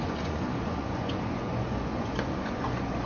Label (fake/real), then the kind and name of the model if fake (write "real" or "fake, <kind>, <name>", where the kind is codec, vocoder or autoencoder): fake, vocoder, Vocos